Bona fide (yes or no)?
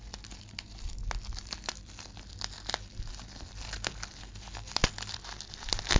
yes